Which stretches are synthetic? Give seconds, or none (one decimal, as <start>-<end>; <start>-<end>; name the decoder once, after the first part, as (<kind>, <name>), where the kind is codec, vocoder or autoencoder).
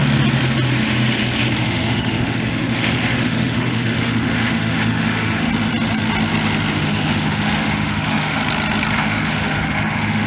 1.5-5.5 (autoencoder, DAC-VAE); 6.7-8.4; 9.0-10.3